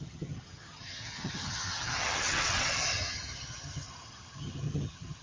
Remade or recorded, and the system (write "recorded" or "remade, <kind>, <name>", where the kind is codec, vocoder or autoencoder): remade, vocoder, HiFi-GAN